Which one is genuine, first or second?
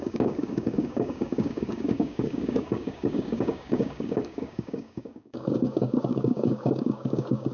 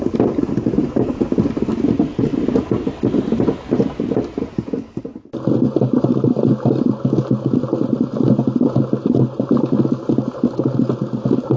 second